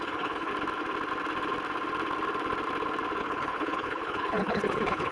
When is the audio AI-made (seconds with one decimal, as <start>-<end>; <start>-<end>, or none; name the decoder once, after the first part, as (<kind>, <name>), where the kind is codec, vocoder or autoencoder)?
0.0-0.5 (codec, HILCodec); 3.2-5.1